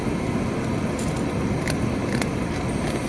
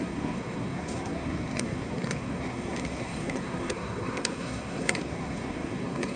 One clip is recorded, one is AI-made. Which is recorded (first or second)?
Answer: first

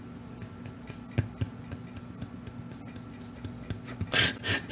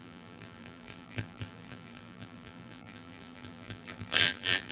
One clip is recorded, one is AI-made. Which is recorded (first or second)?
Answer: first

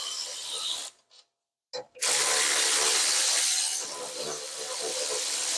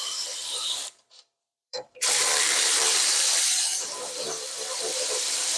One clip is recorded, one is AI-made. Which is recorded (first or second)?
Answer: first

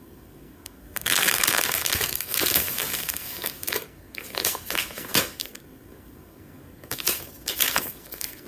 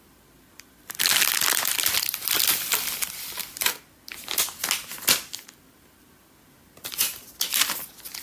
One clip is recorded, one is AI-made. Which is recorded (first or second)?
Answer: second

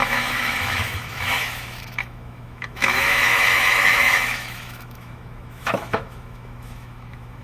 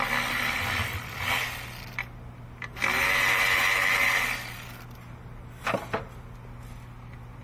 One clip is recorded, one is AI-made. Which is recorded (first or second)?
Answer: second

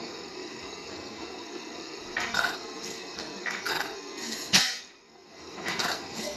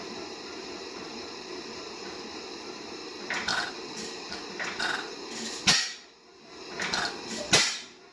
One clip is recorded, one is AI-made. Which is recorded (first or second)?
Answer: second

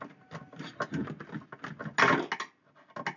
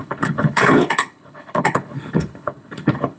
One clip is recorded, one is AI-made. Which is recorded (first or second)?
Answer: first